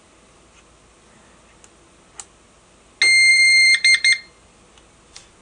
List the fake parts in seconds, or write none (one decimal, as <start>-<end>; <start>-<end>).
3.3-4.1